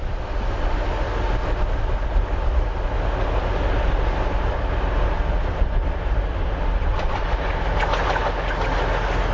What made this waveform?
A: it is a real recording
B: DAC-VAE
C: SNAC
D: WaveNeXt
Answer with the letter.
A